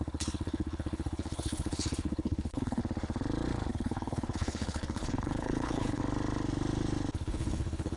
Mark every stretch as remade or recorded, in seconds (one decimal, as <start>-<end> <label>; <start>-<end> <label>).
0.0-2.8 remade; 2.8-3.7 recorded; 3.7-6.0 remade; 6.0-7.1 recorded; 7.1-8.0 remade